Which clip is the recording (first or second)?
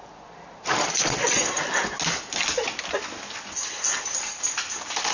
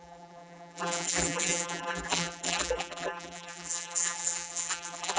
first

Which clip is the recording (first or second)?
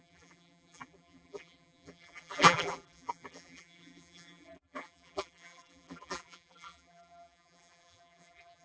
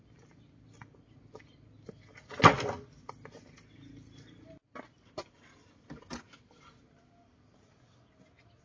second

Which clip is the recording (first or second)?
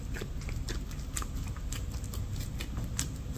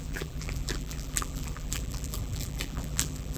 first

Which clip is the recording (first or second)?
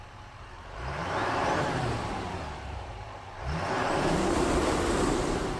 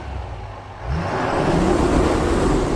second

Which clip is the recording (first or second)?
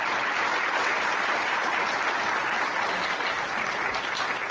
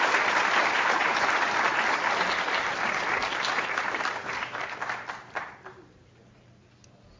first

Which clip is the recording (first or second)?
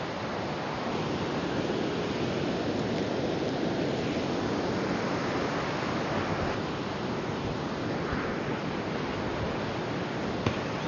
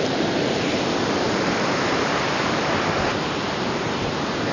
first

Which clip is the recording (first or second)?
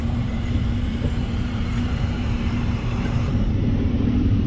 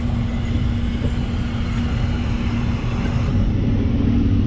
second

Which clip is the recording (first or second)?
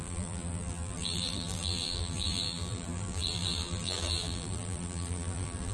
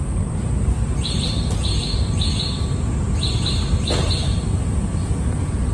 second